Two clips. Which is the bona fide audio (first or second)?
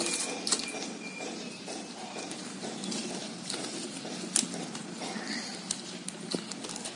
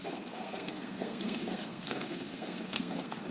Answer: first